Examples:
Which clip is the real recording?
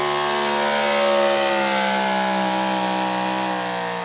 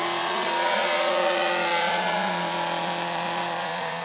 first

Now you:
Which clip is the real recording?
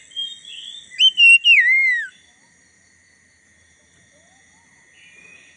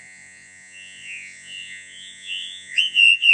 first